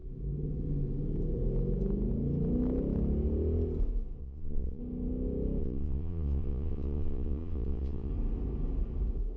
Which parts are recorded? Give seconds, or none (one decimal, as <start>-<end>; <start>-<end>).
0.0-4.2; 4.8-5.6; 8.1-9.4